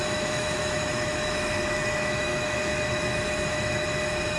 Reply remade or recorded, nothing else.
remade